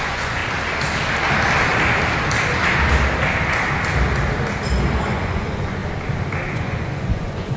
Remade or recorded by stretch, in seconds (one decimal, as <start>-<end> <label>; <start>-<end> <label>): 0.0-0.4 remade; 0.4-5.0 recorded; 5.0-5.8 remade; 5.8-6.5 recorded; 6.5-7.6 remade